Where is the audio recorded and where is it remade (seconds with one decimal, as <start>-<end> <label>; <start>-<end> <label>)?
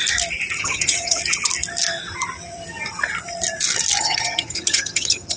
0.0-0.6 recorded; 0.6-1.2 remade; 1.2-4.0 recorded; 4.0-5.4 remade